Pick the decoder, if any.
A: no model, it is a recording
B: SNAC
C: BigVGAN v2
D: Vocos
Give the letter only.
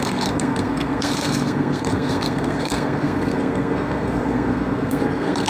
B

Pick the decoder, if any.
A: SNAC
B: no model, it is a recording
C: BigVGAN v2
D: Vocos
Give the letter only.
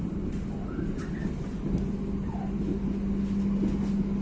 B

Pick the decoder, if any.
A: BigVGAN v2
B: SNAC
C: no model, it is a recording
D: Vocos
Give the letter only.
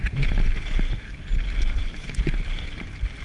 C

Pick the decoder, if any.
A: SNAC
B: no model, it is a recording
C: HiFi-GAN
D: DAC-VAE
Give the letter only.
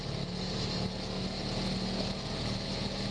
B